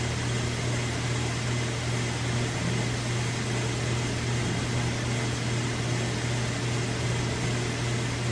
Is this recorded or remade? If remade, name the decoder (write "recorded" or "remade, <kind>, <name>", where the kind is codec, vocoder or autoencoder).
recorded